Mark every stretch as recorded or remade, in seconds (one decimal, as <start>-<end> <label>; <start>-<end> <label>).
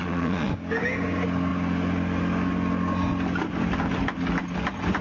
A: 0.0-0.5 remade; 0.5-5.0 recorded